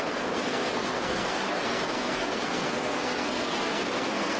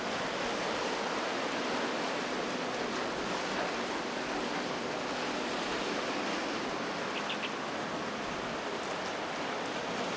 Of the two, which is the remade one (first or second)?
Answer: first